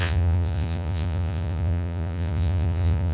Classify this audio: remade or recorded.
remade